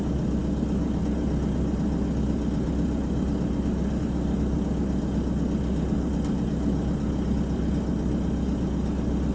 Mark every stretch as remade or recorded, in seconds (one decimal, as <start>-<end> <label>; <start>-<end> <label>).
0.0-9.3 recorded